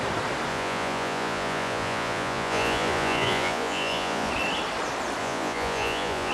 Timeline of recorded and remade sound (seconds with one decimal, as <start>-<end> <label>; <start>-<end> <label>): 0.0-0.5 recorded; 0.5-4.3 remade; 4.3-5.2 recorded; 5.2-6.3 remade